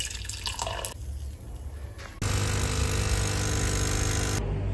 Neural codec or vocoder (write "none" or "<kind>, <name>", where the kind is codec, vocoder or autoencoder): none